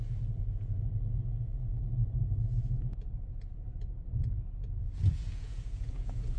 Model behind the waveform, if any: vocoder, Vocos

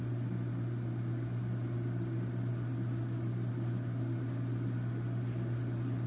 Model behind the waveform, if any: none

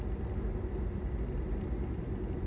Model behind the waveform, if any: none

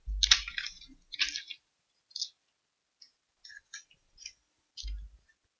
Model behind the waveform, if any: none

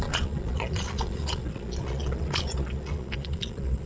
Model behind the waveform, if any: vocoder, Vocos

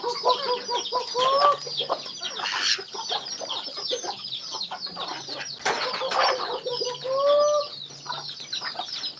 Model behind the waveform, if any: none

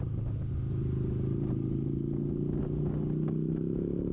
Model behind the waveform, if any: none